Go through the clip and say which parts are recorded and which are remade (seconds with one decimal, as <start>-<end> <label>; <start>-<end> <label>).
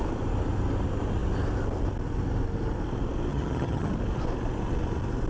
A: 0.0-3.3 recorded; 3.3-3.9 remade; 3.9-5.3 recorded